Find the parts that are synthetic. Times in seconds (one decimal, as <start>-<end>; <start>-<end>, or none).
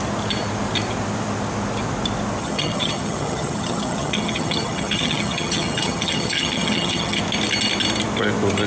2.4-7.2